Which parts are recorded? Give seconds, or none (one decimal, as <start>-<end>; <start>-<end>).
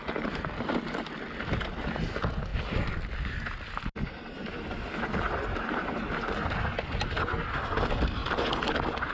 0.0-2.5; 5.6-9.1